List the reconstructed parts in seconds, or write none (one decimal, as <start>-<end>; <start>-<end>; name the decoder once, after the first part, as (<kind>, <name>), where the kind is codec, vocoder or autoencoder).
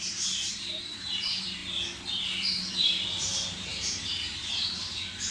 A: 0.0-1.6 (vocoder, BigVGAN v2); 2.2-5.3